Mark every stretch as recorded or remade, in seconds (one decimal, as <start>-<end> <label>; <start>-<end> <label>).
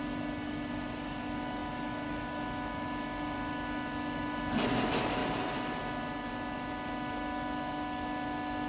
0.0-8.7 recorded